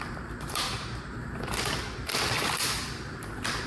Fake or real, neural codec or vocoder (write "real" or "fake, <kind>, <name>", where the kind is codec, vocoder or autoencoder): fake, vocoder, BigVGAN v2